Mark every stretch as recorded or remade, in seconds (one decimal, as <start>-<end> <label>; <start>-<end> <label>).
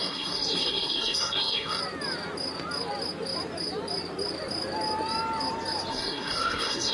0.0-1.8 remade; 1.8-5.9 recorded; 5.9-6.9 remade